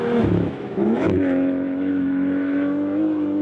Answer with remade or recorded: remade